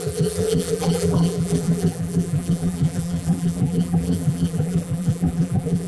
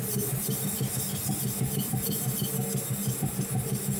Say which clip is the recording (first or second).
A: second